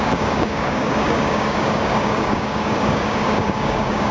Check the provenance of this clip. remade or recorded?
remade